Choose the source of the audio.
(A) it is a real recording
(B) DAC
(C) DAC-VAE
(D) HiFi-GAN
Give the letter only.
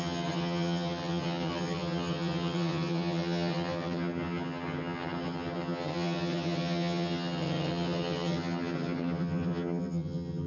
D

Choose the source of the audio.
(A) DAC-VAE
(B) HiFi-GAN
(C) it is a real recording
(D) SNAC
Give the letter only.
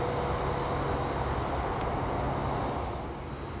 C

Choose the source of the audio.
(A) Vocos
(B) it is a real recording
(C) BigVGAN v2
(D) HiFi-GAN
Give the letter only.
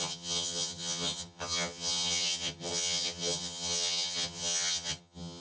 D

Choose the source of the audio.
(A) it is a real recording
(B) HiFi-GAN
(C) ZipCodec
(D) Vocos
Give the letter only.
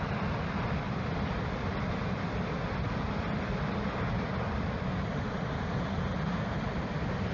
A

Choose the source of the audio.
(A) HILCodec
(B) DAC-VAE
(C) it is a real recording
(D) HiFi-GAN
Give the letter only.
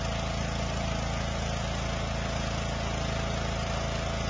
C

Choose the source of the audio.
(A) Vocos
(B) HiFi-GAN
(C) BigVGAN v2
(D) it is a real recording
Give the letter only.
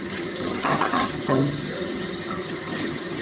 B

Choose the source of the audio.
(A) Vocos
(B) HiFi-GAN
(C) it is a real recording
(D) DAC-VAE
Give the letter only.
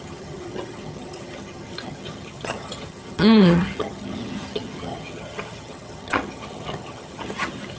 B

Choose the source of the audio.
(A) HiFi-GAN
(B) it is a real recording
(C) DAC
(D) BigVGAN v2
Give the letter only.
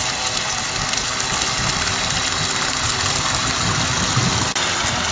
B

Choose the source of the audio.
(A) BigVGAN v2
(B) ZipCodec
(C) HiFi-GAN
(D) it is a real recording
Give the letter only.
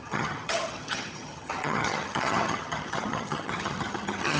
C